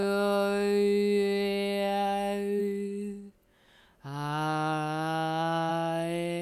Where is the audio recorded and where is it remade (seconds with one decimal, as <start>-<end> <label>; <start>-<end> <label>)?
0.0-2.6 remade; 2.6-3.5 recorded; 3.5-5.7 remade; 5.7-6.4 recorded